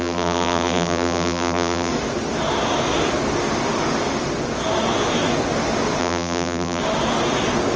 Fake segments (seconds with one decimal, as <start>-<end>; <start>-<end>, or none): 0.0-1.9; 6.0-6.8